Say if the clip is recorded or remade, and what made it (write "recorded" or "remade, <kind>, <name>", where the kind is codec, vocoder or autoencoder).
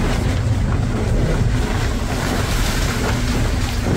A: recorded